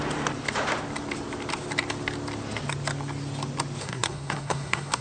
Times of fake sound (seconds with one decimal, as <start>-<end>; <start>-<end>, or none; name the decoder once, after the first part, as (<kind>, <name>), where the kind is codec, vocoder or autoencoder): 3.8-5.0 (codec, SNAC)